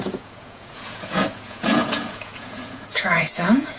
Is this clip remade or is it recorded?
remade